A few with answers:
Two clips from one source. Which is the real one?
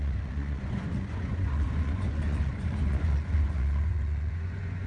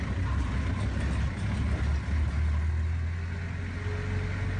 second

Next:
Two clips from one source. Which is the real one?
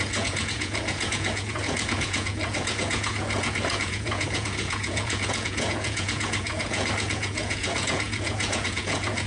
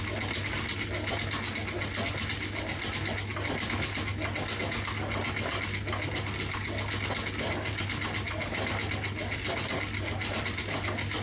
second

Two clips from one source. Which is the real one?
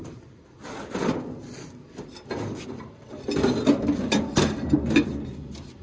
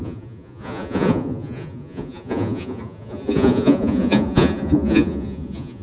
first